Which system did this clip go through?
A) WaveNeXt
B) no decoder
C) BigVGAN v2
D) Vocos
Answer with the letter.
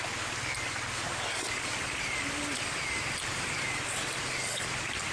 B